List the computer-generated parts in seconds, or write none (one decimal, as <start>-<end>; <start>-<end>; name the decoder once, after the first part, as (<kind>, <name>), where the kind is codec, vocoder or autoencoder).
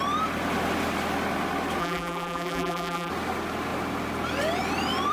1.8-3.1 (vocoder, BigVGAN v2)